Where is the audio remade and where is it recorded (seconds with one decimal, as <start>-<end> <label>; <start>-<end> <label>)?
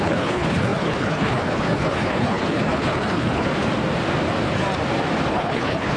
0.0-3.5 remade; 3.5-5.3 recorded; 5.3-6.0 remade